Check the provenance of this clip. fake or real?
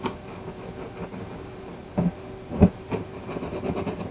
real